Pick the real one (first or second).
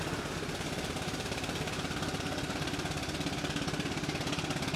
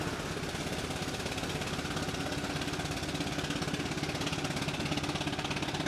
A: second